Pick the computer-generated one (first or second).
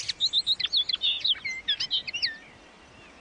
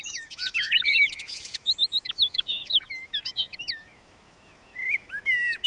second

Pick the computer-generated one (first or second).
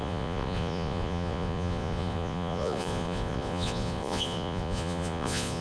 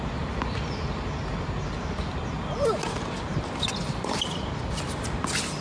first